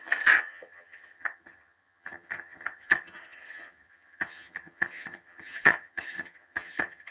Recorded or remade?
remade